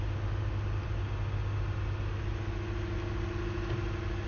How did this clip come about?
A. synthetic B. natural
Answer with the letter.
B